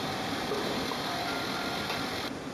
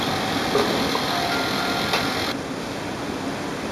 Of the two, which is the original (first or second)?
second